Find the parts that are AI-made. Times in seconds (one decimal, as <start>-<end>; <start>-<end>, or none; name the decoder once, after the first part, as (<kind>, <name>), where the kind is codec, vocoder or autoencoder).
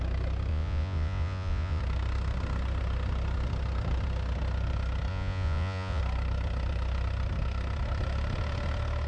0.5-1.8 (vocoder, Vocos); 5.1-6.0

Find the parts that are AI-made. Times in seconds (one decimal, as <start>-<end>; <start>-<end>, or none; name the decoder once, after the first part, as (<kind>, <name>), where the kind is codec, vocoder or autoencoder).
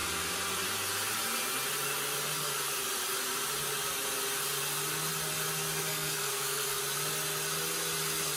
5.8-6.8 (codec, SNAC)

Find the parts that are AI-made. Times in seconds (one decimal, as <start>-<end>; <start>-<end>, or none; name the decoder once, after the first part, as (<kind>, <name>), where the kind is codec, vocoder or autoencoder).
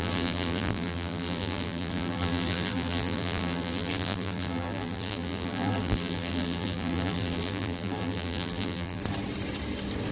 0.0-9.0 (vocoder, BigVGAN v2)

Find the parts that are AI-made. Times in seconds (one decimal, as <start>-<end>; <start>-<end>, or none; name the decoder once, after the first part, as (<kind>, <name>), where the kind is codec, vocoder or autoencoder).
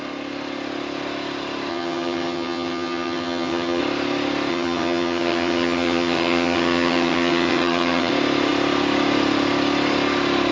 1.7-3.8 (vocoder, HiFi-GAN); 4.5-8.1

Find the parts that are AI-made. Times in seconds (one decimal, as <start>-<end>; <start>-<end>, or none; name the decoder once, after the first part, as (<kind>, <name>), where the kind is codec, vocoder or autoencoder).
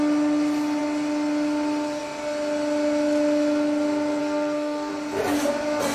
4.2-4.9 (codec, SNAC)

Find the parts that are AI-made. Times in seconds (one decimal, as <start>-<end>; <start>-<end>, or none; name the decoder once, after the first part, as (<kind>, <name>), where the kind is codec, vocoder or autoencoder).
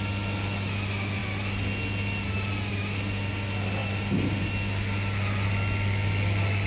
none